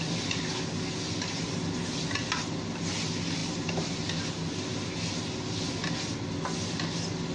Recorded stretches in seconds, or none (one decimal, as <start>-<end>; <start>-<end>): 0.0-7.3